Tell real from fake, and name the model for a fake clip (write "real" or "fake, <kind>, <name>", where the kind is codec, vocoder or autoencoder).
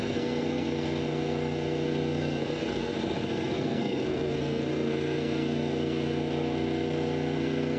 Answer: fake, codec, SNAC